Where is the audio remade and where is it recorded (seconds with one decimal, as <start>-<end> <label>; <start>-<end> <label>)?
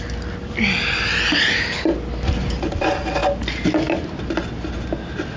0.0-5.4 recorded